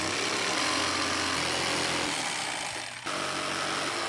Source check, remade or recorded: recorded